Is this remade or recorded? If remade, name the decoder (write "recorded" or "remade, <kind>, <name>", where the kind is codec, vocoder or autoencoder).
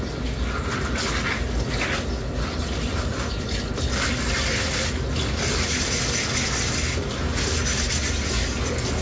recorded